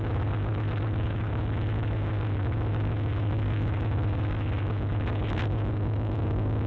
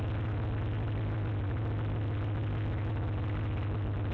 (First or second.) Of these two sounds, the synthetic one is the first